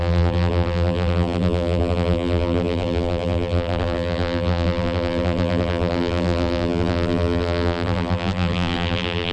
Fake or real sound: fake